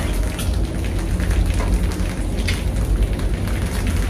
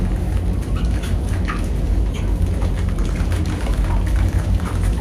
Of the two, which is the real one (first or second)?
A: first